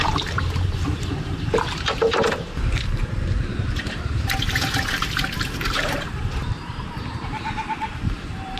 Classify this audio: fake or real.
fake